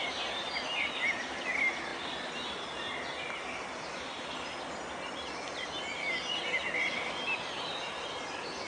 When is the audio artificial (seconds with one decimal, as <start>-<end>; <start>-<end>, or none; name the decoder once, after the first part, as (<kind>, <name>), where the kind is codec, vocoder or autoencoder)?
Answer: none